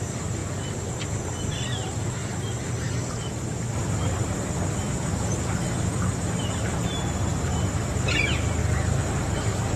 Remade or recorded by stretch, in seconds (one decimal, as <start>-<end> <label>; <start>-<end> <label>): 0.0-8.6 remade; 8.6-9.3 recorded; 9.3-9.8 remade